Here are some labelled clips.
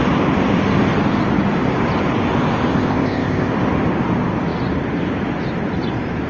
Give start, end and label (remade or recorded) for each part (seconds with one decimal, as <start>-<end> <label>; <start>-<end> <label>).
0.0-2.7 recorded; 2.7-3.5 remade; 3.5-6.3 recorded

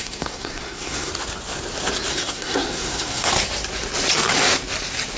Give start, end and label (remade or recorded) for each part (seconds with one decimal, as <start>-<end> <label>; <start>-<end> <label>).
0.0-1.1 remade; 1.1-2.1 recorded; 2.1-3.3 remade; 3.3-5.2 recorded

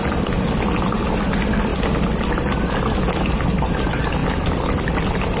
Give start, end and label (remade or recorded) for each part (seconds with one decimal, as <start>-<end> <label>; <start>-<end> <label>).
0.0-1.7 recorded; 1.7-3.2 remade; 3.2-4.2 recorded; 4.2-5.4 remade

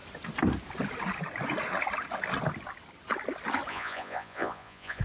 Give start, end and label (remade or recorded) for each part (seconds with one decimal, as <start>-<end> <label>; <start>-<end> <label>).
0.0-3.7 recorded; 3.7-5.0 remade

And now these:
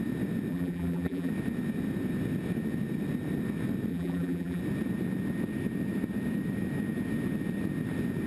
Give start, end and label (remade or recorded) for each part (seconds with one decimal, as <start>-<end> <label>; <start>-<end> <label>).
0.0-0.5 recorded; 0.5-1.3 remade; 1.3-3.9 recorded; 3.9-4.6 remade; 4.6-8.3 recorded

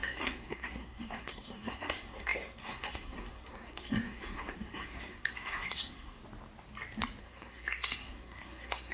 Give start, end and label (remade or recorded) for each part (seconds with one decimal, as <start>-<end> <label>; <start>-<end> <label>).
0.0-6.2 remade; 6.2-7.2 recorded; 7.2-8.9 remade

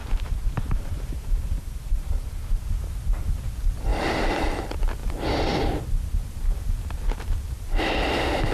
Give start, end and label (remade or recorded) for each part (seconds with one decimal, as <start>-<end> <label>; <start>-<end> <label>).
0.0-2.8 remade; 2.8-3.9 recorded; 3.9-4.6 remade; 4.6-5.0 recorded; 5.0-5.8 remade; 5.8-8.5 recorded